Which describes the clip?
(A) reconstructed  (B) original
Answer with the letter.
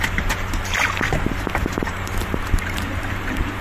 A